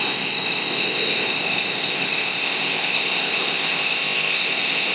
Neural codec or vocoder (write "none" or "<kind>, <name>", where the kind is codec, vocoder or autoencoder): codec, ZipCodec